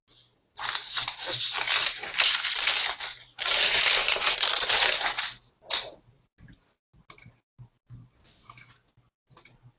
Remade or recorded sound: recorded